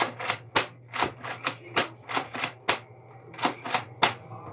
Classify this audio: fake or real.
real